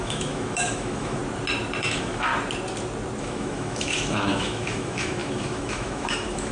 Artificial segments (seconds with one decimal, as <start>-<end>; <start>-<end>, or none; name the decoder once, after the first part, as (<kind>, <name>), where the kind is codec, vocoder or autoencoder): 0.0-1.2 (autoencoder, DAC-VAE); 1.8-2.3; 3.2-6.5